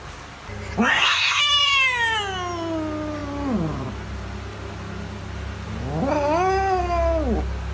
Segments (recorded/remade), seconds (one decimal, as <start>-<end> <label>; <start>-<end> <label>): 0.0-0.9 recorded; 0.9-1.4 remade; 1.4-7.7 recorded